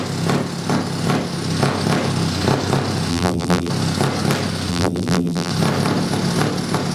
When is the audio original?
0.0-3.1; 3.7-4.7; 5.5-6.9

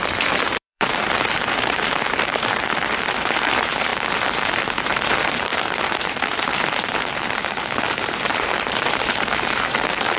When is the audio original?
none

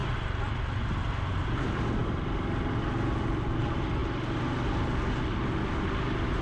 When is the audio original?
0.0-6.4